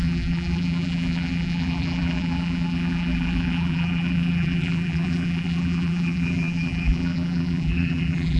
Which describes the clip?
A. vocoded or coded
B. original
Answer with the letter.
A